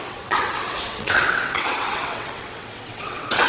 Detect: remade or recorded remade